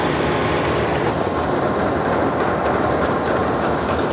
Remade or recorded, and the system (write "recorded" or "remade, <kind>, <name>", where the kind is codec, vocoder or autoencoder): recorded